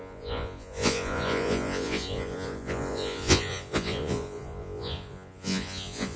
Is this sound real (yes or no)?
no